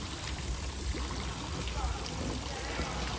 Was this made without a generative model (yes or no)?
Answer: yes